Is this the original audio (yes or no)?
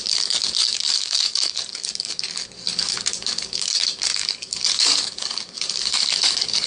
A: no